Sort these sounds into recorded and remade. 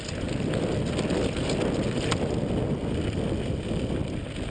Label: recorded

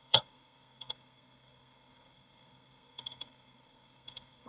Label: remade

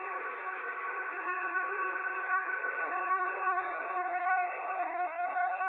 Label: remade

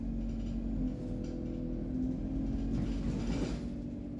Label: recorded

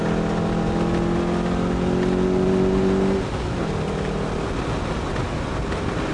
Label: recorded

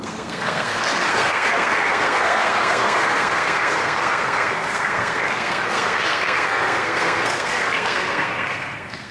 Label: remade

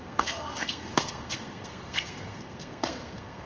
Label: remade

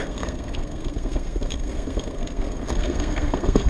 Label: remade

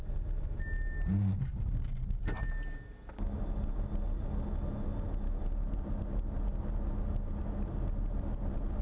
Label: recorded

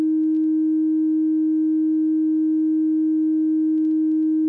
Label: recorded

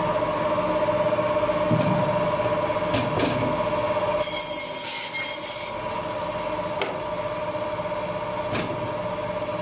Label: recorded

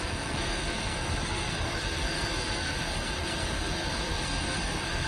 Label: remade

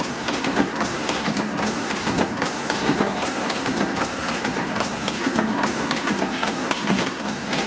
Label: remade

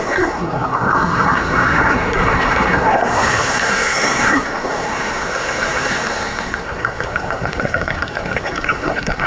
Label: remade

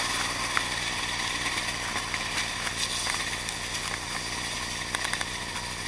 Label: recorded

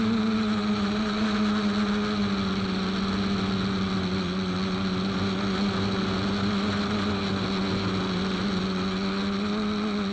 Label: recorded